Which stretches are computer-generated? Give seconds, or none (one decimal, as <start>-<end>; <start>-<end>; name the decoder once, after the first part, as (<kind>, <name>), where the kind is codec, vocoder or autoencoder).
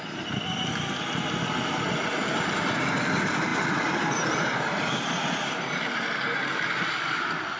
none